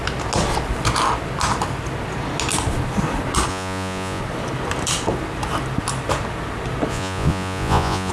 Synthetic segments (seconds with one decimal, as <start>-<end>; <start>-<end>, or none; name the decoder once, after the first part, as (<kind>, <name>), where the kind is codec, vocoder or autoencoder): 3.5-4.2 (vocoder, Vocos); 6.9-8.1